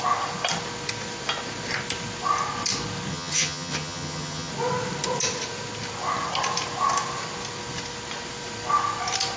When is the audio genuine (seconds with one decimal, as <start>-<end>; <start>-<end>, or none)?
0.0-3.1; 4.5-9.4